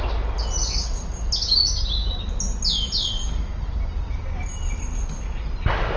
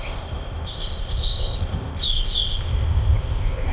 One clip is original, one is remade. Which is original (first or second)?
first